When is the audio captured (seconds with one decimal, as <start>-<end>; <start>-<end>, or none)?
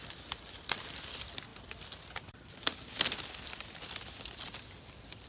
0.0-5.3